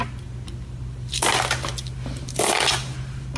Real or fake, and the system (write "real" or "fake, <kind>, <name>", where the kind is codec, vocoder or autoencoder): real